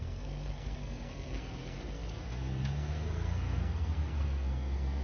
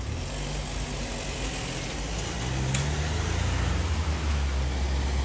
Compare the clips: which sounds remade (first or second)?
first